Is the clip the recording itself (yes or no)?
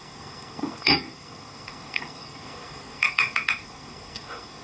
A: no